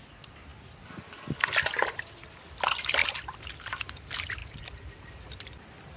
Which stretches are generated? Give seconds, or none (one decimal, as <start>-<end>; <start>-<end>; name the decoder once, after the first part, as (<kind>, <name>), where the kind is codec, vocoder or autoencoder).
3.0-3.9 (vocoder, BigVGAN v2); 4.4-6.0